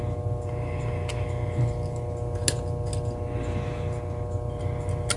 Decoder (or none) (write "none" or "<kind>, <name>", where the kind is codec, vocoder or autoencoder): none